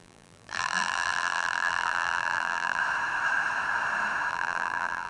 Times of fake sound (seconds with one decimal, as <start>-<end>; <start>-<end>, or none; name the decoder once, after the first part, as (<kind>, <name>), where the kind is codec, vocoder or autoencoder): 0.0-2.8 (vocoder, BigVGAN v2); 4.3-5.1